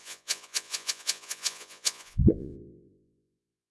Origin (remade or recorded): remade